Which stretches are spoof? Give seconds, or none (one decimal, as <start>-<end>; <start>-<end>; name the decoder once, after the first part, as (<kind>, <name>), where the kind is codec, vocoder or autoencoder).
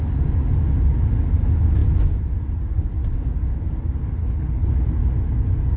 4.2-4.7 (codec, HILCodec)